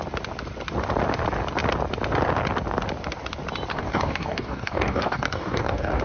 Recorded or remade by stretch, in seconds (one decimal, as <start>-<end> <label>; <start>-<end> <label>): 0.0-3.7 recorded; 3.7-6.0 remade